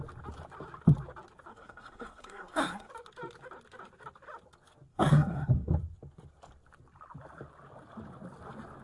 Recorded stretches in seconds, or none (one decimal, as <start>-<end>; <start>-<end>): 0.0-1.5; 2.9-4.9; 5.7-8.8